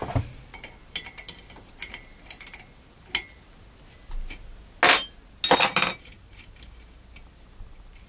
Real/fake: real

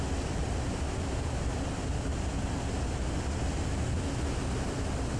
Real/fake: real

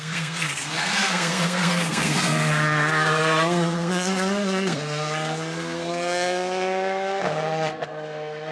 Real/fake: fake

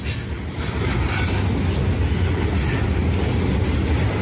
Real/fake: real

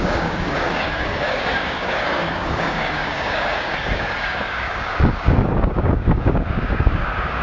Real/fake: fake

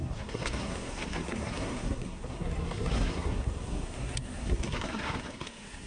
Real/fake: fake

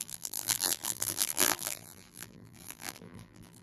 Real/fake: fake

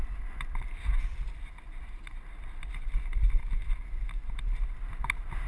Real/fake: real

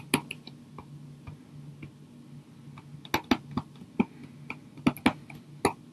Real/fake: real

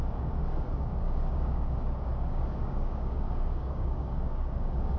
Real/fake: fake